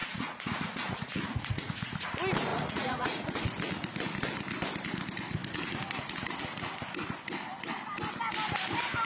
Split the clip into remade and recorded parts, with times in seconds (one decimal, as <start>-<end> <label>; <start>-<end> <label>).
0.0-2.1 remade; 2.1-2.5 recorded; 2.5-3.4 remade; 3.4-9.0 recorded